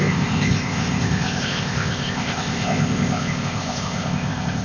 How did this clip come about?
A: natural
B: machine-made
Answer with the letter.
B